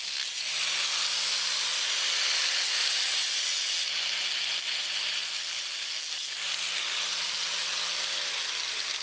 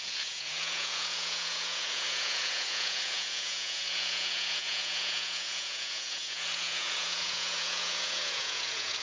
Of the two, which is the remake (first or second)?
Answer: second